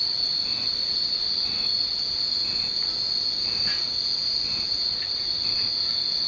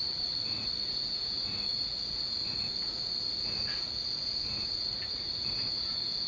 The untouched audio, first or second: first